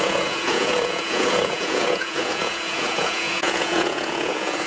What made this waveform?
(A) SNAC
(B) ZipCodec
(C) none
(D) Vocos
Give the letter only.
D